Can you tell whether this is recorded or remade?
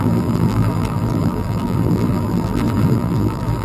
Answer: remade